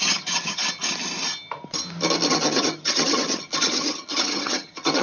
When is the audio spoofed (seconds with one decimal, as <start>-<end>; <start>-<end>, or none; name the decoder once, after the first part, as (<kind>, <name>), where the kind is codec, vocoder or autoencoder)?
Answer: 0.0-0.6 (vocoder, HiFi-GAN); 2.3-5.0